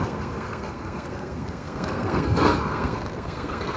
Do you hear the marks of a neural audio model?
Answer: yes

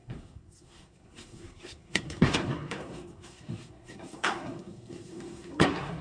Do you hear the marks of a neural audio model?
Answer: yes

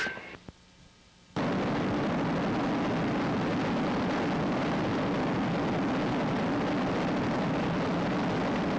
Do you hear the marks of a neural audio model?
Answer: no